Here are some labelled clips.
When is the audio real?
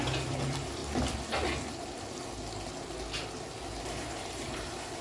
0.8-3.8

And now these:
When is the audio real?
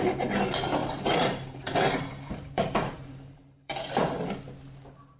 0.0-0.8; 3.9-5.2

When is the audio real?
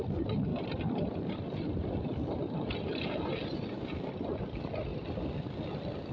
0.0-0.5; 1.2-1.8; 4.1-6.1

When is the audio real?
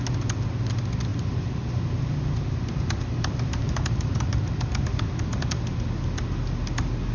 0.0-1.1; 5.4-7.1